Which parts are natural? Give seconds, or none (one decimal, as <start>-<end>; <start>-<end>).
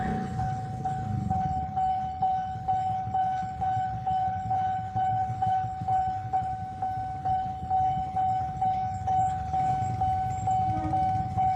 6.5-7.2; 9.7-11.2